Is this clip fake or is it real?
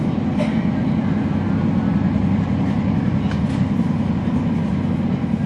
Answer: real